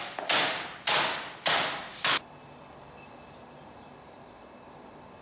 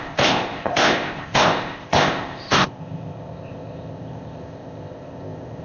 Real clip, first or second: first